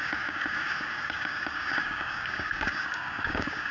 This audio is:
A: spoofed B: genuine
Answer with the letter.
A